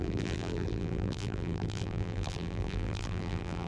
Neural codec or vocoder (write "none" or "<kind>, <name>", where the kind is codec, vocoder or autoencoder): vocoder, BigVGAN v2